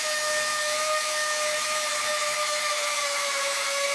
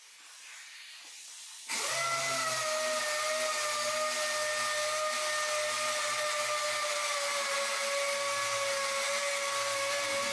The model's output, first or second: first